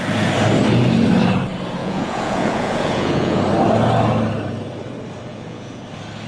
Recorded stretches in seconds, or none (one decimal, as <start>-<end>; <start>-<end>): 0.0-1.8; 3.4-5.3; 5.8-6.3